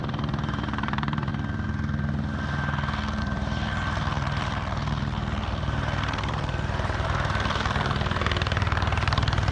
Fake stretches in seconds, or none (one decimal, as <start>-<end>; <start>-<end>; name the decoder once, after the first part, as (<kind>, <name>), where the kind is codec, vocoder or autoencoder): 0.0-1.3 (vocoder, BigVGAN v2); 3.2-9.5